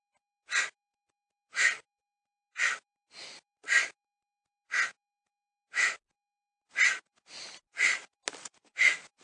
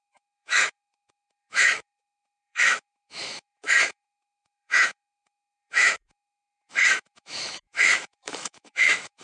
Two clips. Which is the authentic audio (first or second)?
first